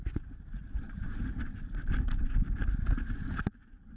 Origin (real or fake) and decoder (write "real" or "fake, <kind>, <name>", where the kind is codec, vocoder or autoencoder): real